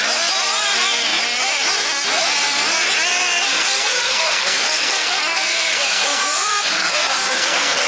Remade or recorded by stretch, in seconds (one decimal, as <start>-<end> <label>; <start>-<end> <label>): 0.0-3.5 recorded; 3.5-7.9 remade